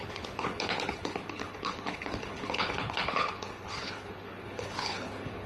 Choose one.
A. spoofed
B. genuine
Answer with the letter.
A